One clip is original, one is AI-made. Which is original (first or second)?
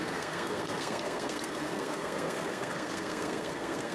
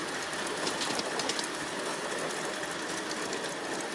second